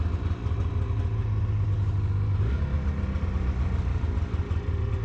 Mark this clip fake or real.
real